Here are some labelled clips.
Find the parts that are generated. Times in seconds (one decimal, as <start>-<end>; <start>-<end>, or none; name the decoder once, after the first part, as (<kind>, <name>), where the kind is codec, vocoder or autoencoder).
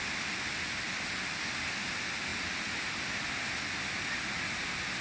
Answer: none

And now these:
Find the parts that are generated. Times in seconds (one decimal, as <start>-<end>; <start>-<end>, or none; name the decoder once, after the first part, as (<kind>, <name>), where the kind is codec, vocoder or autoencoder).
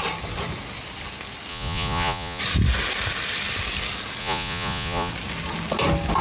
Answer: 1.5-2.4 (vocoder, Vocos); 4.2-5.1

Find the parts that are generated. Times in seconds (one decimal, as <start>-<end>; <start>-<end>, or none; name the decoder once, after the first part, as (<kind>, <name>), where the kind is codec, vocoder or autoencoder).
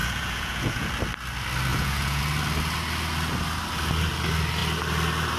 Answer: 0.0-0.9 (vocoder, Vocos); 1.7-2.2